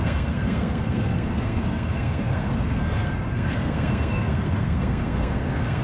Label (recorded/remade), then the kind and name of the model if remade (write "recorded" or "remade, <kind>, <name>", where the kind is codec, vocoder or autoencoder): remade, codec, SNAC